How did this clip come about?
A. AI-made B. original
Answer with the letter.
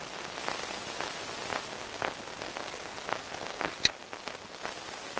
B